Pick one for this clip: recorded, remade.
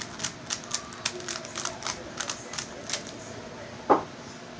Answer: recorded